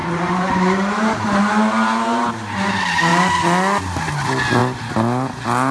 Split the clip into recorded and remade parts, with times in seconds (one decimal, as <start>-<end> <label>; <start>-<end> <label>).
0.0-1.4 remade; 1.4-5.7 recorded